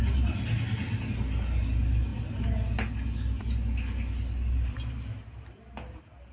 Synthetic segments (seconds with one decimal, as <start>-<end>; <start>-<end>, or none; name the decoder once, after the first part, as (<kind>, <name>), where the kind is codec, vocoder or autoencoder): none